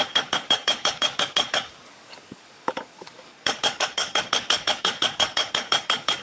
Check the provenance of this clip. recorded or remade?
remade